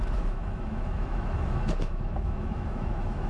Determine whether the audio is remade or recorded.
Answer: remade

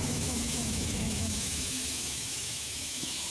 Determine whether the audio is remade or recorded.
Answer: remade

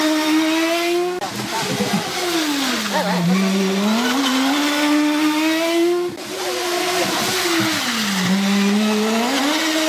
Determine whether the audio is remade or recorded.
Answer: recorded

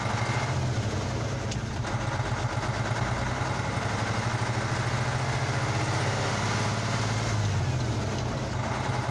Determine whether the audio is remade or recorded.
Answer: recorded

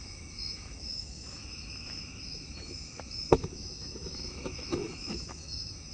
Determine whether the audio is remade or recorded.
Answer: remade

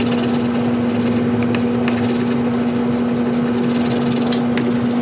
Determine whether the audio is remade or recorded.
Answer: recorded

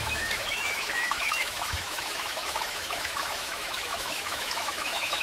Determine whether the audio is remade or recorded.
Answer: remade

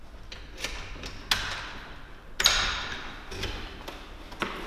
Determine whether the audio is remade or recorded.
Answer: recorded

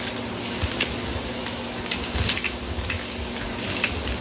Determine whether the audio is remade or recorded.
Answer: recorded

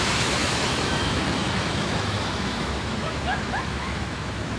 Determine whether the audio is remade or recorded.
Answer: remade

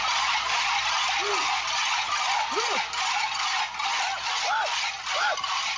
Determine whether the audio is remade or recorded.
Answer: recorded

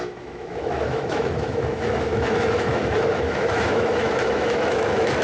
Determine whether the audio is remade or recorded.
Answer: remade